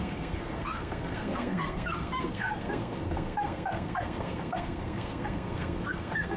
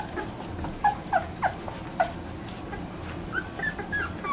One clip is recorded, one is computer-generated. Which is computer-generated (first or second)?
first